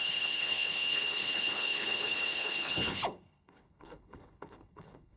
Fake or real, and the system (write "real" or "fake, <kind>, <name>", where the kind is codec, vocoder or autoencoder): fake, codec, HILCodec